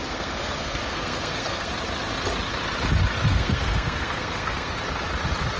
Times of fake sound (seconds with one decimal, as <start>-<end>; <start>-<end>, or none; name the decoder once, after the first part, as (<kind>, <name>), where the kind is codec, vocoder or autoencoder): 0.0-1.7 (codec, SNAC); 3.3-4.8